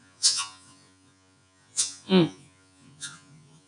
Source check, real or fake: fake